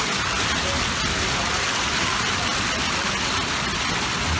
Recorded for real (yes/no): yes